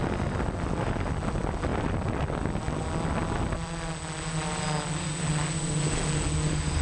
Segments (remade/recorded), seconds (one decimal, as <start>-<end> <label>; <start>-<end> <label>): 0.0-6.8 recorded

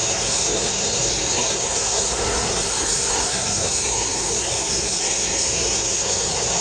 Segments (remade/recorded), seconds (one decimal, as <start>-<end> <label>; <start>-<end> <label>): 0.0-6.6 remade

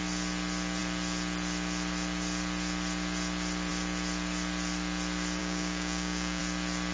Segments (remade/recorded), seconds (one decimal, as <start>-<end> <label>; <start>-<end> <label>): 0.0-5.4 recorded; 5.4-6.4 remade; 6.4-6.9 recorded

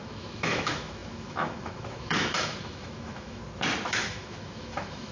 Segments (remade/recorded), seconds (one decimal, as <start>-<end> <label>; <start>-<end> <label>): 0.0-3.4 remade; 3.4-3.9 recorded; 3.9-5.1 remade